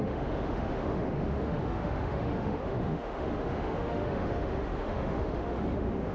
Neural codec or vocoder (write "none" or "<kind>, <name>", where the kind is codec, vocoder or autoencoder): autoencoder, DAC-VAE